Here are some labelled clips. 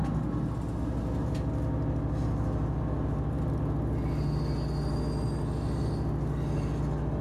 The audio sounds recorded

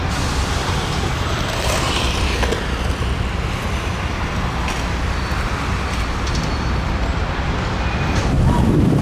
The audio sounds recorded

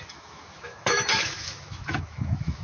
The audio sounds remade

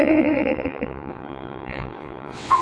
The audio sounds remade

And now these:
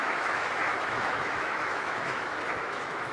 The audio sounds remade